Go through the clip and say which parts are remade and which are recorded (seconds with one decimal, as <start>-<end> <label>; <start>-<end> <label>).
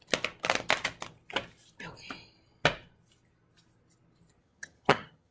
0.0-4.4 recorded; 4.4-5.3 remade